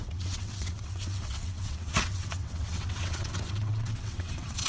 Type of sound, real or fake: fake